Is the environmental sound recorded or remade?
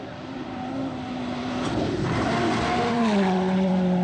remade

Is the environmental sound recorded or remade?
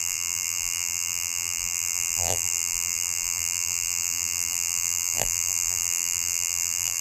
remade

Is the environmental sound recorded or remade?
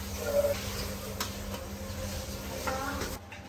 recorded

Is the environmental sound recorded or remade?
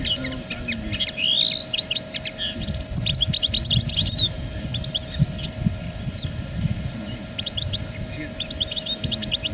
recorded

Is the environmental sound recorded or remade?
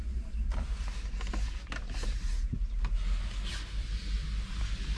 recorded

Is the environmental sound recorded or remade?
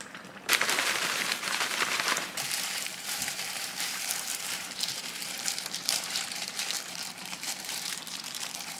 remade